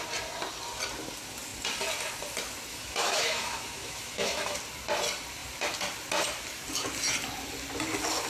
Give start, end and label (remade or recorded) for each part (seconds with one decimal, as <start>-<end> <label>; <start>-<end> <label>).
0.0-2.7 recorded; 2.7-4.6 remade; 4.6-8.3 recorded